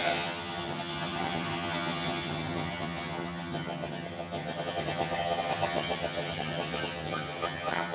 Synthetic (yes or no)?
yes